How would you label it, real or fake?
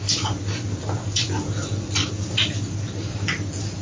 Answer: real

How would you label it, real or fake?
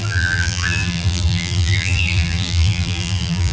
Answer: fake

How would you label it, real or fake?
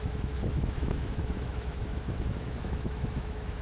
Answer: fake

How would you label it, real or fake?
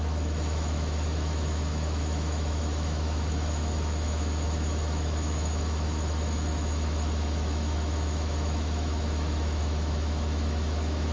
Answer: fake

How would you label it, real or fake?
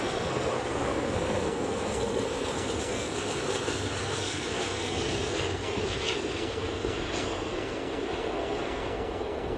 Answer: fake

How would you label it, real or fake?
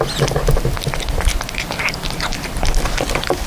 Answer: real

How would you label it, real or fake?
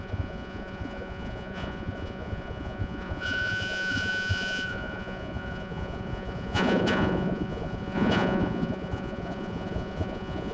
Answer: fake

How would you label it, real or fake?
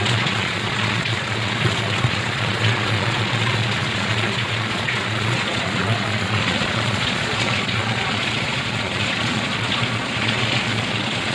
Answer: fake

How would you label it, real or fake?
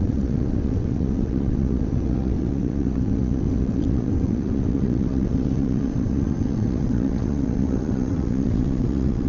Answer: fake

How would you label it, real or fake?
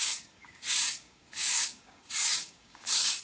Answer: fake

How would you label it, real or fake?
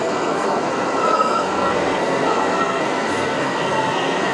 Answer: fake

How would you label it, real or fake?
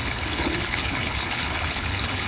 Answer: fake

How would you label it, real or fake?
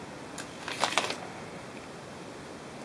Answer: real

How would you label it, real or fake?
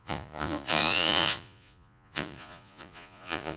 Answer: fake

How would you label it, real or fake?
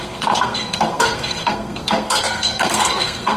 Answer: fake